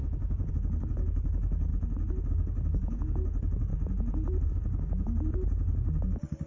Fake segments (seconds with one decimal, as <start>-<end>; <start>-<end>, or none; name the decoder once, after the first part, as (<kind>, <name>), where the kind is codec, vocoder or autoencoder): 0.0-1.7 (codec, DAC); 2.3-3.7; 4.5-6.5

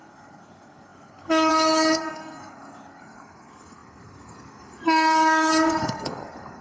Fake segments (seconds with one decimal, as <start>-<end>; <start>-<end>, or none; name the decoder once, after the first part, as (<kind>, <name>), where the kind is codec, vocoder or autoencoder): 0.0-6.6 (codec, DAC)

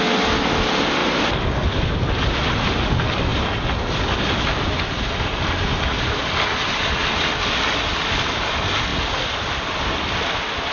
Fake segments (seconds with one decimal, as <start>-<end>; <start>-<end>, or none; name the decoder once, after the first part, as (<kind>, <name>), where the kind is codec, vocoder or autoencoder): none

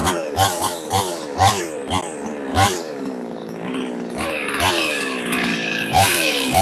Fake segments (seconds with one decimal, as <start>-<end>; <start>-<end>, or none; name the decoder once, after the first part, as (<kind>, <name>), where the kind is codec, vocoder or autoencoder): 0.0-1.6 (codec, DAC); 2.5-6.6